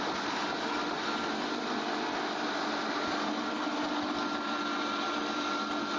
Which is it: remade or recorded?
recorded